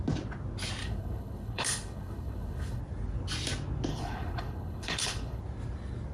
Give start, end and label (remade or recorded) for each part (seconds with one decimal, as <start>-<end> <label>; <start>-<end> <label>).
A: 0.0-0.8 recorded; 0.8-2.8 remade; 2.8-3.9 recorded; 3.9-5.4 remade; 5.4-6.1 recorded